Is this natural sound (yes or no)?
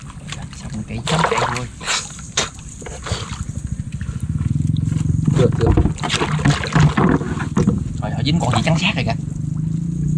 yes